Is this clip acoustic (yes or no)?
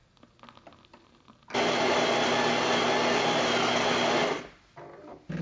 yes